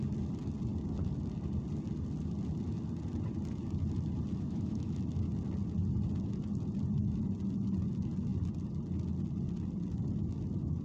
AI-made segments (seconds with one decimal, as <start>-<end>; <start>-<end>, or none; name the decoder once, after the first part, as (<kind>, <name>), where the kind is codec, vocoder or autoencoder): 4.3-5.0 (autoencoder, DAC-VAE)